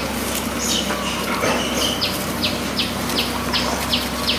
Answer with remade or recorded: recorded